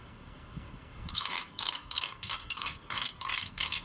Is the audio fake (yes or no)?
yes